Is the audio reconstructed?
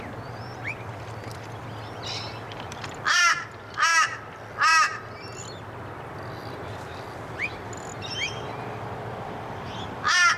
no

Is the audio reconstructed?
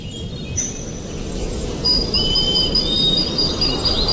yes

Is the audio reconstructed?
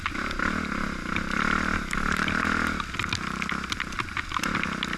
no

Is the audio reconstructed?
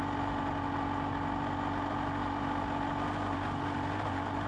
no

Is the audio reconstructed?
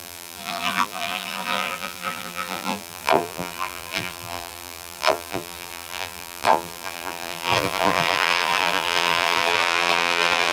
yes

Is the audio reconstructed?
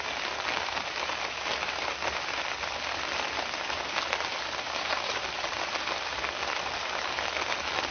no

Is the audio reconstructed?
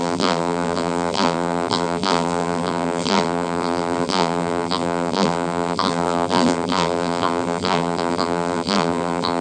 yes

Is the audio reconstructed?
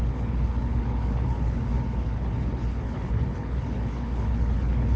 yes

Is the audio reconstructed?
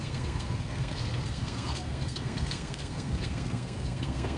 yes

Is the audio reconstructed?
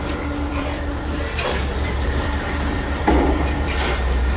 yes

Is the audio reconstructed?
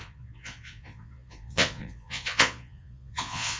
yes